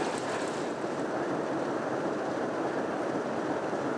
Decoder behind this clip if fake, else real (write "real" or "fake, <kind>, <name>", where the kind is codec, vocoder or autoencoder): fake, vocoder, BigVGAN v2